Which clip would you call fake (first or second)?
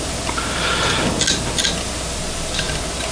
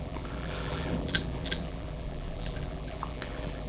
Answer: second